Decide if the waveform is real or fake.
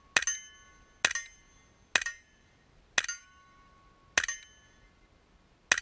real